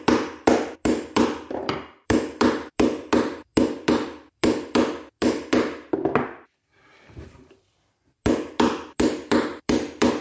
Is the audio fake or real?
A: fake